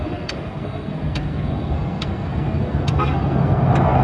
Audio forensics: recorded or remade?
remade